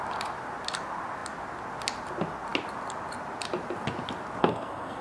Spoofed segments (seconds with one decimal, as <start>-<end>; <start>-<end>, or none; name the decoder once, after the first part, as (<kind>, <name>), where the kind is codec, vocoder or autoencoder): 4.4-5.0 (codec, SNAC)